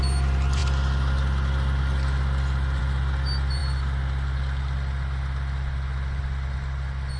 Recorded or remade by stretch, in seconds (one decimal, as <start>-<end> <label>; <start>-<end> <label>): 0.0-7.2 recorded